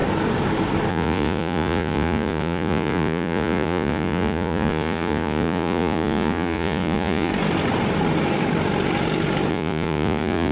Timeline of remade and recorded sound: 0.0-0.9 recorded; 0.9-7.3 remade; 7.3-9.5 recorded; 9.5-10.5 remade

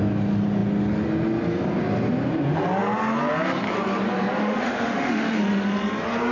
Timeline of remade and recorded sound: 0.0-4.4 recorded; 4.4-5.4 remade; 5.4-6.3 recorded

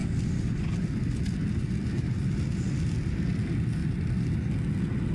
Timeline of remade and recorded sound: 0.0-5.1 recorded